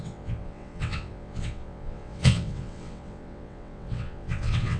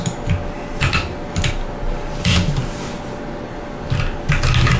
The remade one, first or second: first